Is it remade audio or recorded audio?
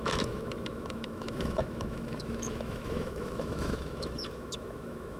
remade